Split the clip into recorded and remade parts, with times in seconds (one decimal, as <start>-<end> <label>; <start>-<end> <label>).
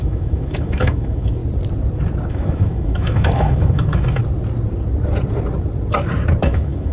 0.0-1.4 remade; 1.4-2.3 recorded; 2.3-4.2 remade; 4.2-6.4 recorded; 6.4-6.9 remade